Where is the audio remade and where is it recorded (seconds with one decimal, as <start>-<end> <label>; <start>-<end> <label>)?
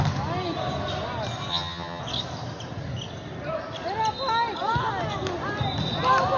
0.0-1.5 recorded; 1.5-2.0 remade; 2.0-6.4 recorded